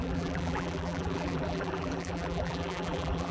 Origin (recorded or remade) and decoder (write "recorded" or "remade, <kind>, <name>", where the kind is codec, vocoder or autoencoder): remade, vocoder, BigVGAN v2